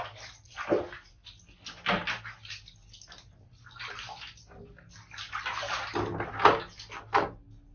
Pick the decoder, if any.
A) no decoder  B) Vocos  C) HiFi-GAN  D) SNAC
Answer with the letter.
A